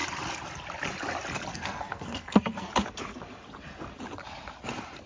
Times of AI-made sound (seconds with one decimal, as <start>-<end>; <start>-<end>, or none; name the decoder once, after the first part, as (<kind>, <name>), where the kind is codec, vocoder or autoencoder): 1.5-2.7 (codec, SNAC)